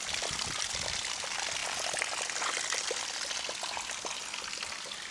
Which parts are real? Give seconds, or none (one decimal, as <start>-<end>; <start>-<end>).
0.0-5.1